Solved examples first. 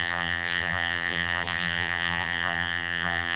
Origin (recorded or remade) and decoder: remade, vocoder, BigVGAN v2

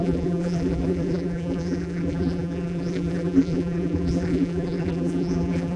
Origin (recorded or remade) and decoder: remade, vocoder, BigVGAN v2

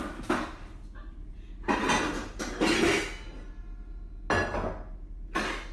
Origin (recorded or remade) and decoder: recorded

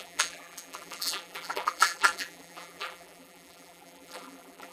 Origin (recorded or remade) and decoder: remade, vocoder, BigVGAN v2